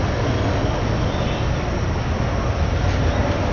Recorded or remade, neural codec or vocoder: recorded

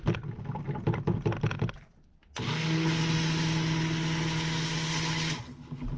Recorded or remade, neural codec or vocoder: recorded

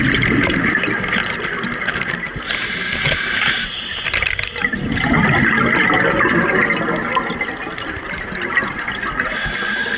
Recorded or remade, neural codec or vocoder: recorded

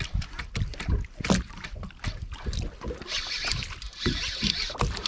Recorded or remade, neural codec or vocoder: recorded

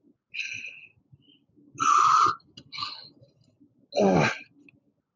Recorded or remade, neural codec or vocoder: recorded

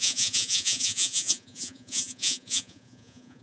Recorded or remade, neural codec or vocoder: remade, vocoder, Vocos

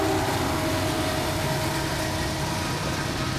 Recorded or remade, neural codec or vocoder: recorded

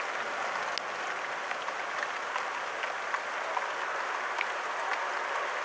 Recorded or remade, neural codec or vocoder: recorded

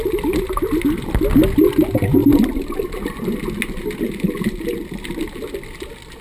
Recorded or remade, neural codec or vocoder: recorded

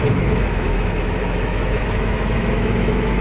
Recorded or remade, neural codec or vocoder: remade, autoencoder, DAC-VAE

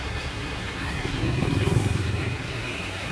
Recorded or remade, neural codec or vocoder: remade, codec, SNAC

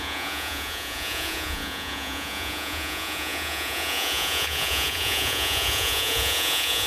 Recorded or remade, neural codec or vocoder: remade, vocoder, Vocos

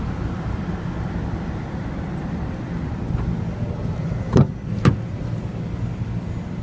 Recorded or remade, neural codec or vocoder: recorded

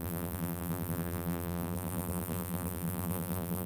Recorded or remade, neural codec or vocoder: remade, vocoder, BigVGAN v2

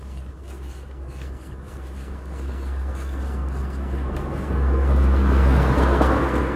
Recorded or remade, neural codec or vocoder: remade, codec, SNAC